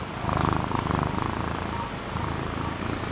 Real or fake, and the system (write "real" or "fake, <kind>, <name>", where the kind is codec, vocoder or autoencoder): real